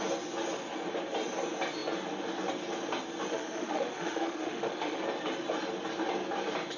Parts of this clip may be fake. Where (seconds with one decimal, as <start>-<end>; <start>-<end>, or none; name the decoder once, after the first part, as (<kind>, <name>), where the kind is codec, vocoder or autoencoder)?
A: 3.3-5.0 (autoencoder, DAC-VAE)